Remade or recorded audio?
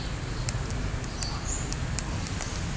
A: recorded